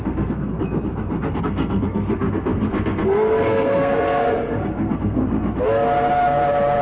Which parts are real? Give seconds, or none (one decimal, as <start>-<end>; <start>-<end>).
0.5-1.4; 5.2-6.8